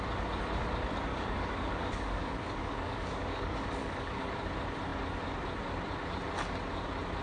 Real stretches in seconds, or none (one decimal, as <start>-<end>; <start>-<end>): 0.0-1.1; 4.3-7.2